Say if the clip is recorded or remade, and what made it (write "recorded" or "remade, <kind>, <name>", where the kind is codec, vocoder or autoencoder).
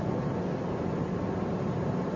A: recorded